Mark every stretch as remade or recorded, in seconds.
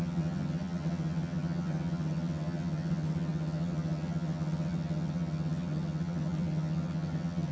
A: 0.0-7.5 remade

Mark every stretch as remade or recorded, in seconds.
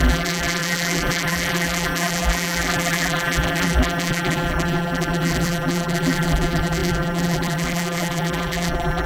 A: 0.0-9.1 remade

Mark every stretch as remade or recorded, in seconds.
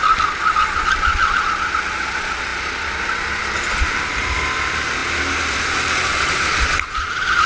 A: 0.0-7.5 recorded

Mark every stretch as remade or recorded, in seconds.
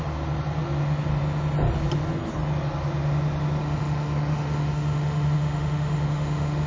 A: 0.0-3.6 recorded; 3.6-6.7 remade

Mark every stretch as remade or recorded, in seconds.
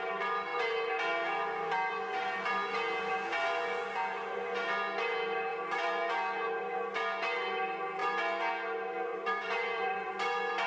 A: 0.0-5.5 recorded; 5.5-6.1 remade; 6.1-9.1 recorded; 9.1-10.1 remade; 10.1-10.7 recorded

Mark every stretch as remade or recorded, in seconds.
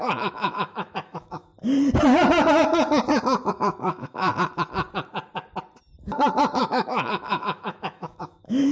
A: 0.0-1.5 remade; 1.5-3.5 recorded; 3.5-4.3 remade; 4.3-6.6 recorded; 6.6-8.7 remade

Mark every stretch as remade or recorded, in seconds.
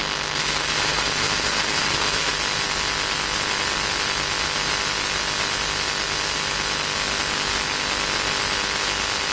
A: 0.0-0.4 recorded; 0.4-2.3 remade; 2.3-9.3 recorded